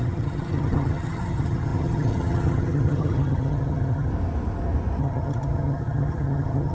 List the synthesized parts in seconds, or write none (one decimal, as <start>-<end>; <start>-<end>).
0.0-4.1; 5.0-6.7